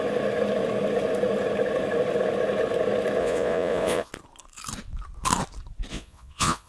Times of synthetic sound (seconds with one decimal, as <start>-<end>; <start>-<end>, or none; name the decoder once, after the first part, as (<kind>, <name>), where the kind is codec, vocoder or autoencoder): 3.2-4.1 (vocoder, Vocos); 5.9-6.7